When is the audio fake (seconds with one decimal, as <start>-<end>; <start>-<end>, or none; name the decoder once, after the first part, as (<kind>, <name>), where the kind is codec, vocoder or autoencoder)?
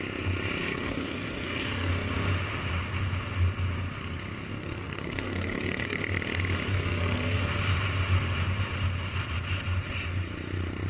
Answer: 0.6-1.9 (codec, SNAC); 4.5-6.0; 6.7-7.4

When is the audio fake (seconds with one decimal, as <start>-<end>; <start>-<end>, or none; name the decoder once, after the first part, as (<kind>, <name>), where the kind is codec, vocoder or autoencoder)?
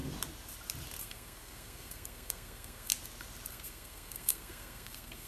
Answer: 1.0-2.9 (codec, SNAC); 3.5-5.3